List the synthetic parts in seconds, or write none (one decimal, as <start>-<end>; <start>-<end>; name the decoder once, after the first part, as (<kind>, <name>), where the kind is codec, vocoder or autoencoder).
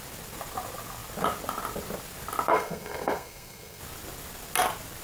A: 2.5-3.8 (codec, SNAC)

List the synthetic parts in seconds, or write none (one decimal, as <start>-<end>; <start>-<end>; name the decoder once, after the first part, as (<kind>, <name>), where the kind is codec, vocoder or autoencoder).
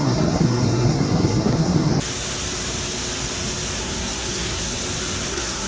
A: 0.0-1.9 (codec, SNAC); 3.8-4.8; 5.3-5.7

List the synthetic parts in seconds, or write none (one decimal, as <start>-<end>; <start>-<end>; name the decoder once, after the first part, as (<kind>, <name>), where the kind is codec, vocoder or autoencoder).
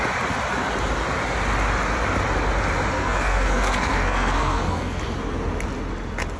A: 2.9-5.0 (codec, SNAC)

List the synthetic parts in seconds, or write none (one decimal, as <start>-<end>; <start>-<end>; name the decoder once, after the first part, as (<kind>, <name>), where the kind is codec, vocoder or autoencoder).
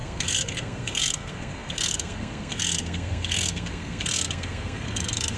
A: 0.0-5.4 (codec, SNAC)